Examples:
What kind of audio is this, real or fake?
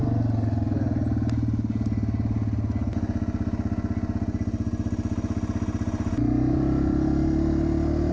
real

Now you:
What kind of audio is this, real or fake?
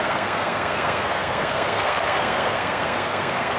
fake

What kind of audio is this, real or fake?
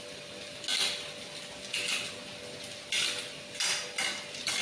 real